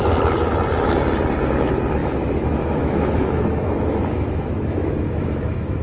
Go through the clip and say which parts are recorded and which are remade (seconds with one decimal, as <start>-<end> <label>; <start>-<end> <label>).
0.0-2.0 recorded; 2.0-5.8 remade